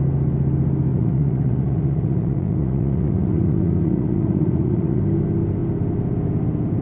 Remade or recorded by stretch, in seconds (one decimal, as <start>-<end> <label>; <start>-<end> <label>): 0.0-0.9 recorded; 0.9-5.0 remade; 5.0-6.8 recorded

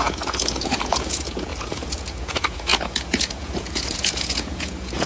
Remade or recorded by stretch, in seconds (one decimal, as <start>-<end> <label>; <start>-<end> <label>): 0.0-5.1 remade

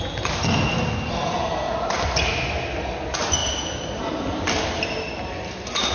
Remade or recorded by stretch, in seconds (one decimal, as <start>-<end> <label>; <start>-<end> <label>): 0.0-5.9 recorded